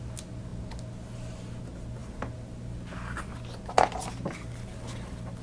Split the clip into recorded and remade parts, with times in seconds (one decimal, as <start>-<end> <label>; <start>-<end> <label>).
0.0-5.4 recorded